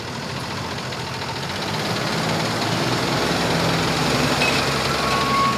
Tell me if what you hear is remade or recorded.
recorded